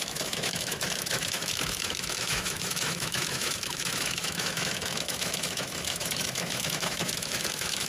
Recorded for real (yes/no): no